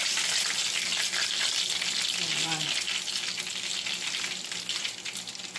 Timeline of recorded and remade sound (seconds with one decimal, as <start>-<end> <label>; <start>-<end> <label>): 0.0-5.6 recorded